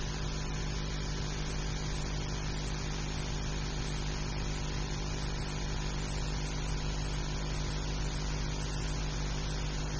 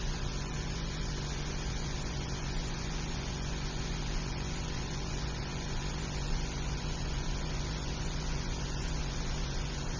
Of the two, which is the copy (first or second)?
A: second